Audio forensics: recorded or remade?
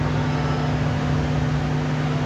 recorded